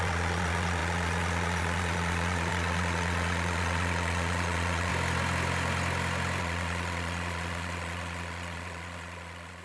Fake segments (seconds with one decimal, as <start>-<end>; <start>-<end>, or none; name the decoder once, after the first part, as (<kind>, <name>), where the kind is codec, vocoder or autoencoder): 0.0-4.9 (vocoder, Vocos); 6.4-9.6